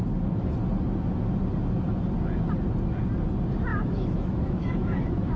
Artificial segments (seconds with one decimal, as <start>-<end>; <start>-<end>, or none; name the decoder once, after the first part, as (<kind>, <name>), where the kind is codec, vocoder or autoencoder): 3.7-5.4 (autoencoder, DAC-VAE)